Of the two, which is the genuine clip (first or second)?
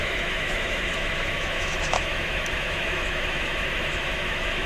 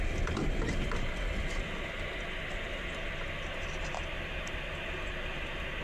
second